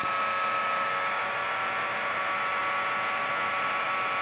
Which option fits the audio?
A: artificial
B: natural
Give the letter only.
B